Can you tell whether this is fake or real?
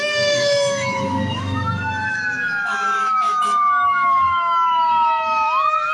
fake